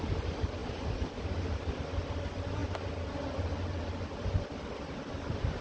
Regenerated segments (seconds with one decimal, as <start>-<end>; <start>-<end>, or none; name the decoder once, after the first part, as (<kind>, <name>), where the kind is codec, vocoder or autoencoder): none